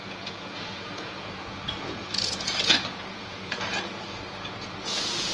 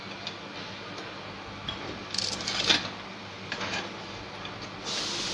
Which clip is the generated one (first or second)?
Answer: first